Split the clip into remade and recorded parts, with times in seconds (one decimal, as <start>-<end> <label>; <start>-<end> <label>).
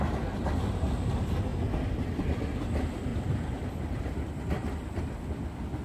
0.0-1.5 recorded; 1.5-2.2 remade; 2.2-3.1 recorded; 3.1-5.0 remade; 5.0-5.8 recorded